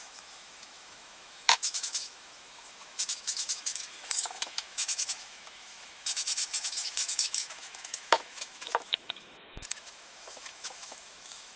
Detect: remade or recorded remade